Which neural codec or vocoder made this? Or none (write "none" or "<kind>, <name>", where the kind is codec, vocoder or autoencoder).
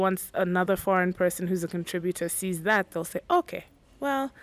none